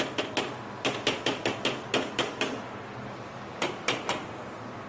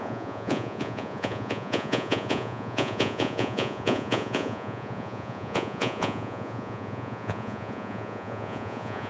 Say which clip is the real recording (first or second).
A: first